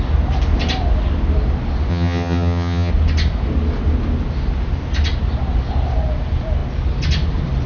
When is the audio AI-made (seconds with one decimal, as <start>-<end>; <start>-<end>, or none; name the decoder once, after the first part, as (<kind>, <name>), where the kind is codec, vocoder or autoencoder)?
1.9-2.9 (vocoder, HiFi-GAN)